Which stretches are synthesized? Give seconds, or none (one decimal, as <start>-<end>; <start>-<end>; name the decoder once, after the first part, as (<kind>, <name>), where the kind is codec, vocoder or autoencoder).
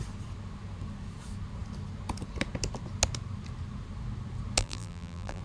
4.6-5.4 (vocoder, BigVGAN v2)